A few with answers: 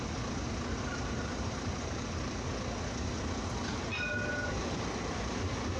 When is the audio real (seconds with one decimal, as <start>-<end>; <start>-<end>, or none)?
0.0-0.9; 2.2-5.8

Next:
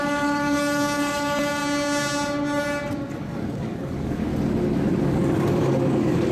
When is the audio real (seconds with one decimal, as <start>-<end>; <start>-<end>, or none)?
1.6-3.2; 4.3-5.0

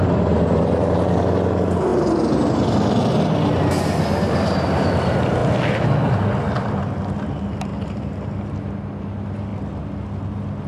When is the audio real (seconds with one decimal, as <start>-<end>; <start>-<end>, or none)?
0.0-1.9; 4.9-7.7; 8.5-10.7

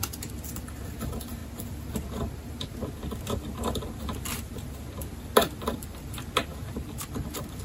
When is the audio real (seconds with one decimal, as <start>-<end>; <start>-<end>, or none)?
0.0-7.6

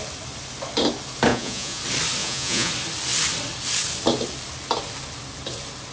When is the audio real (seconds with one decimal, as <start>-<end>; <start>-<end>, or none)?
0.0-1.3; 1.8-2.2; 2.7-5.9

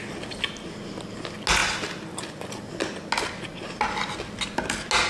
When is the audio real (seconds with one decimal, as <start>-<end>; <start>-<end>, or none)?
0.0-5.1